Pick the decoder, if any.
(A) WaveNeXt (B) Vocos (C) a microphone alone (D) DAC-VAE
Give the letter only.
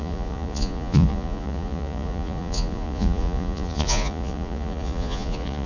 B